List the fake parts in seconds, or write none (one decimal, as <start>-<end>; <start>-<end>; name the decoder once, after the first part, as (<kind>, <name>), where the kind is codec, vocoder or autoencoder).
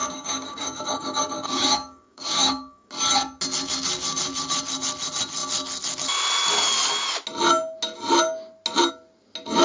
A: 0.0-2.9 (codec, DAC)